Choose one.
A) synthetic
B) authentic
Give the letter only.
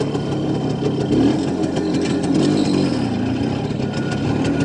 B